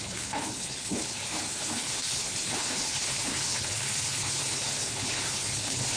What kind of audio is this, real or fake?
fake